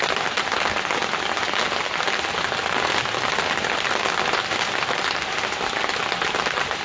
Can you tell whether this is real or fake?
real